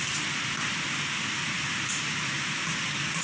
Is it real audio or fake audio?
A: real